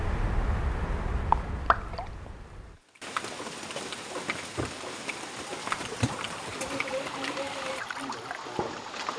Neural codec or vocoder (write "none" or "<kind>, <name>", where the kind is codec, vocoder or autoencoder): none